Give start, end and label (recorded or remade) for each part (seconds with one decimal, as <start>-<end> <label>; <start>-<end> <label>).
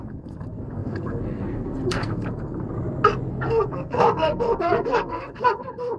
0.0-2.7 remade; 2.7-3.3 recorded; 3.3-6.0 remade